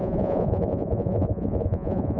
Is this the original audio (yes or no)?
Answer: no